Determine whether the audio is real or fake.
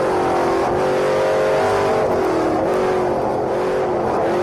real